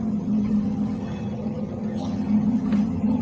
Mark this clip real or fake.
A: fake